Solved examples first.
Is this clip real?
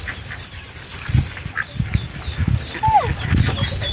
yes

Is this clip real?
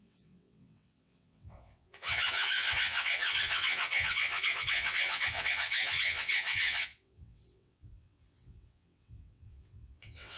no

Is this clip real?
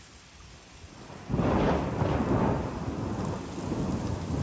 yes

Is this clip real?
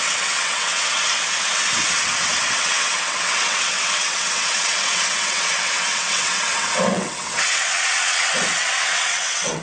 no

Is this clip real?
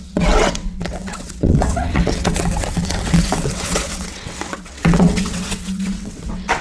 no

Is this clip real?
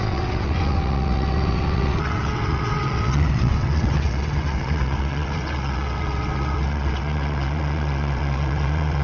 no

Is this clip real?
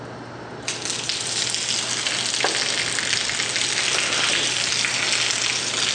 yes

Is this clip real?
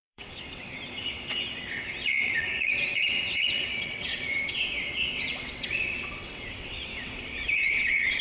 no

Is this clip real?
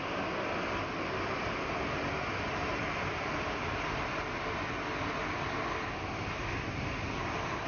yes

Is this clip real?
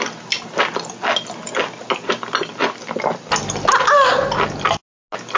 yes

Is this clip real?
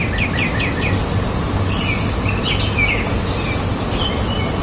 yes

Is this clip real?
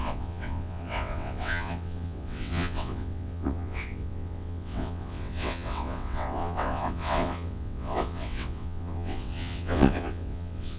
no